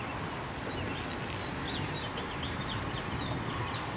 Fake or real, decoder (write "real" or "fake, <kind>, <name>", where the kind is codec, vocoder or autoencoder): real